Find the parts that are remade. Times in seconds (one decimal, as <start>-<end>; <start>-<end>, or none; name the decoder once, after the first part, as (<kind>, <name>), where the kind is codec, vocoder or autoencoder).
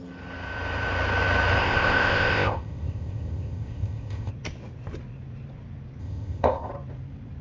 1.6-4.3 (codec, ZipCodec); 6.0-6.7